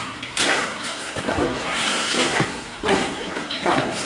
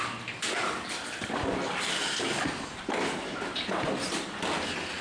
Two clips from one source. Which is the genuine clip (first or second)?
second